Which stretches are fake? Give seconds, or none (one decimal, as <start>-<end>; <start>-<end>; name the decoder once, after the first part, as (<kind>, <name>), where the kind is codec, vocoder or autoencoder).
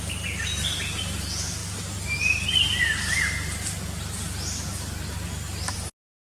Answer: 1.6-4.3 (vocoder, BigVGAN v2)